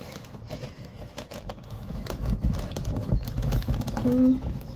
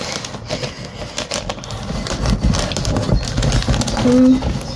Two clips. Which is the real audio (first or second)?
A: second